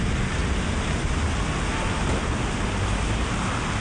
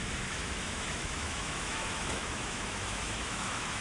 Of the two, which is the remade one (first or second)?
second